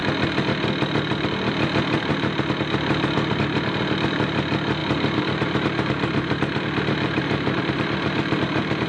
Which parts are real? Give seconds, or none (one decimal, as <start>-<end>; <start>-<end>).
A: 0.0-4.8